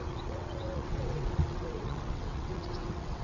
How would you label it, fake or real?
fake